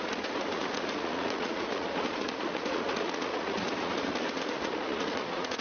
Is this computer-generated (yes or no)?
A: yes